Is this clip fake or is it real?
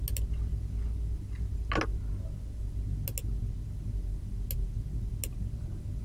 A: real